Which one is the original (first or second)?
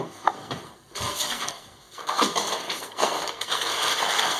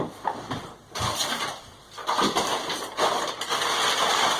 second